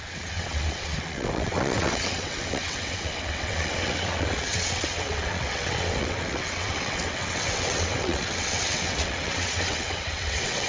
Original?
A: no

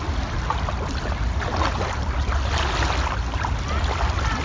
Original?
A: yes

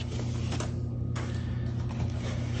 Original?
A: yes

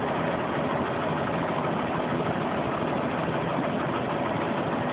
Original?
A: yes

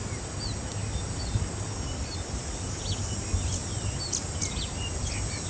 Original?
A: yes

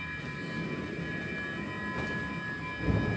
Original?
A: yes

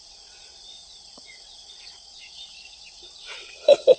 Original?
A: no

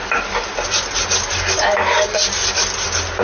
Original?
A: yes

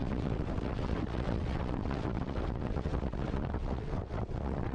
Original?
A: no